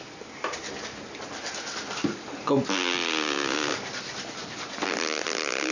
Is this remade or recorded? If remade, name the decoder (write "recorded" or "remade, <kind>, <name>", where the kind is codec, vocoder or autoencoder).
recorded